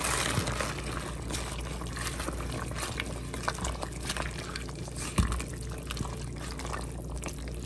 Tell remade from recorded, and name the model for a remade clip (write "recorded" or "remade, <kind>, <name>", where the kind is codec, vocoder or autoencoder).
recorded